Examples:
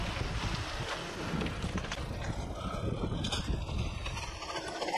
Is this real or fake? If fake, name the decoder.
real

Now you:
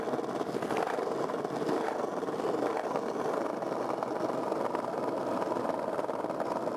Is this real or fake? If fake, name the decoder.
real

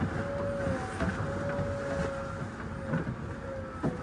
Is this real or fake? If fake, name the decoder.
real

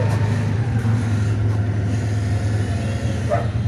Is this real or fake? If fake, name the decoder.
real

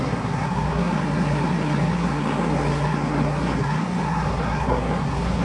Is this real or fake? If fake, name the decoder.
fake, codec, SNAC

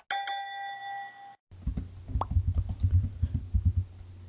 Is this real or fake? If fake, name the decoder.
real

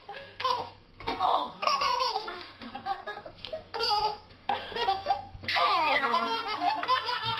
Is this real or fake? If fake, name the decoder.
fake, codec, SNAC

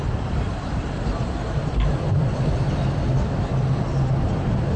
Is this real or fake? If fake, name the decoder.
real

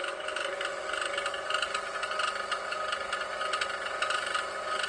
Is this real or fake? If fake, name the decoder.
real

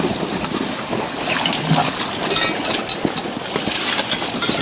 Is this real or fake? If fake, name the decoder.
real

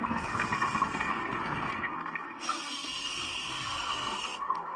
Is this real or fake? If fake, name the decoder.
fake, codec, SNAC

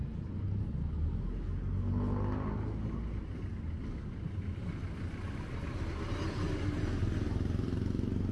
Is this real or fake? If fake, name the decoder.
real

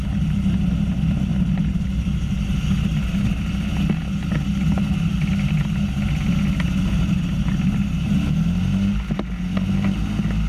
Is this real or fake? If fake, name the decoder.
real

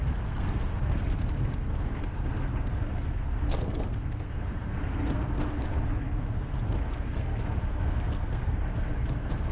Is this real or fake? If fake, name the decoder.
fake, codec, SNAC